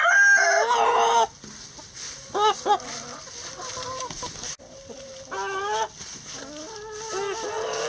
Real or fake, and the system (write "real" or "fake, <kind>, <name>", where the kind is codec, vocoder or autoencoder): real